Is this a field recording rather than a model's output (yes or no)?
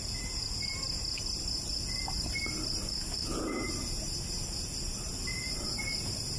yes